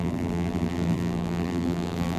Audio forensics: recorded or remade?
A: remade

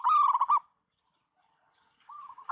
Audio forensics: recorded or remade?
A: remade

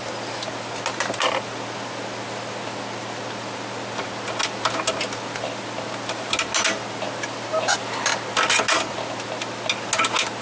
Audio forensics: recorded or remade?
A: recorded